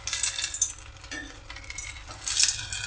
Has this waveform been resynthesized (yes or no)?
no